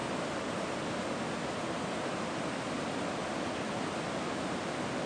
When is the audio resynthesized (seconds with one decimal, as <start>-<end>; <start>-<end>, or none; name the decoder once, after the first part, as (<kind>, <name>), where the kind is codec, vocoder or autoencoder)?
none